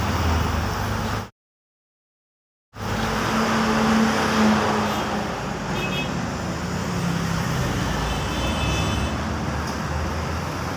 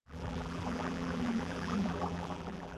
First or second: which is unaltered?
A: first